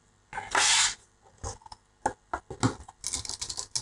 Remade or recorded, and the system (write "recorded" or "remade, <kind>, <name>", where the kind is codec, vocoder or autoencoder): recorded